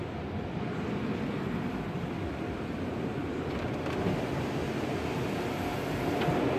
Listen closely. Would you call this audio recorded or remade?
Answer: recorded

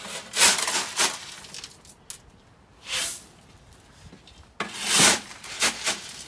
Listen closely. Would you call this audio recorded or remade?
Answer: recorded